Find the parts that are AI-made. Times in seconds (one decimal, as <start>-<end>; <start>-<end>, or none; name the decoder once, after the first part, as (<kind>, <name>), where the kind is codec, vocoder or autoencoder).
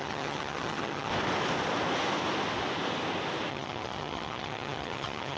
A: 0.0-1.1 (vocoder, HiFi-GAN); 3.5-5.4